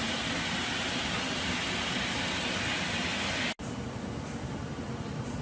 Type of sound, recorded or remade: recorded